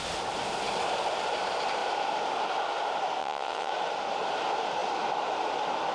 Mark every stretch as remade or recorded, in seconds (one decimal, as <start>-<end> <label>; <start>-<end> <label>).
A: 0.0-3.2 recorded; 3.2-3.7 remade; 3.7-5.9 recorded